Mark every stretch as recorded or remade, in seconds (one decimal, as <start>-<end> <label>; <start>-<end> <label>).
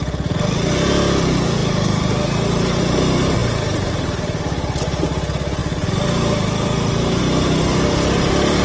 0.0-8.6 recorded